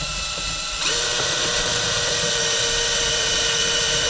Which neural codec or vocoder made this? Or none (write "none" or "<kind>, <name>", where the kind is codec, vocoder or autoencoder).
vocoder, BigVGAN v2